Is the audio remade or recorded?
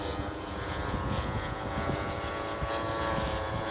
remade